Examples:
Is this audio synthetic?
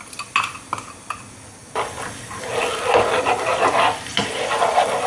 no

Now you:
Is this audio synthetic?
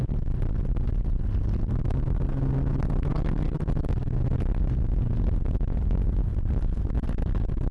no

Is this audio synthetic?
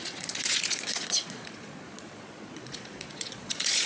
yes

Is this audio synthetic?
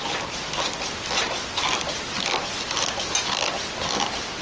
no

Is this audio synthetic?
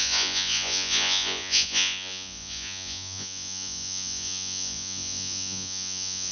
yes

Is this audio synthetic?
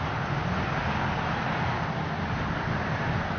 no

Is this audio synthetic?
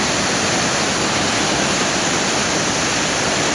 no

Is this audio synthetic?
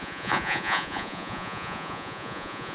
yes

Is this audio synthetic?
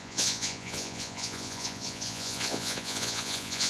yes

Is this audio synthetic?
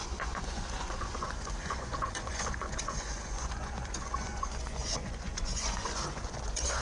yes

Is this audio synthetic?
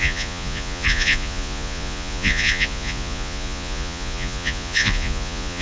yes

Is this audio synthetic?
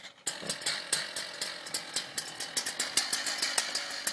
no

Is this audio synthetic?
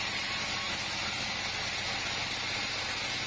no